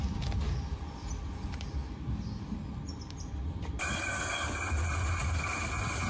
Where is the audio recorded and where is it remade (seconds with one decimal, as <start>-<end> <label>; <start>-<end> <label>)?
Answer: 0.0-6.1 recorded